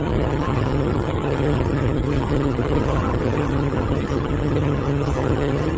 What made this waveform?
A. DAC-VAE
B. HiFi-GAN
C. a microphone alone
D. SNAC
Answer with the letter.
B